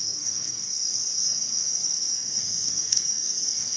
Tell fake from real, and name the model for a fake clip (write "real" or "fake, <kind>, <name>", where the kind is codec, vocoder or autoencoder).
fake, codec, SNAC